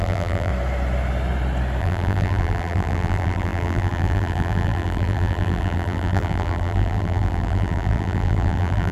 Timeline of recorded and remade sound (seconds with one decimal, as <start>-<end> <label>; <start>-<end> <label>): 0.0-0.5 remade; 0.5-1.8 recorded; 1.8-8.9 remade